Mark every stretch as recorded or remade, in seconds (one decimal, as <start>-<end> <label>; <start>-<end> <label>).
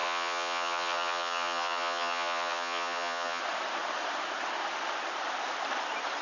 0.0-3.4 remade; 3.4-6.2 recorded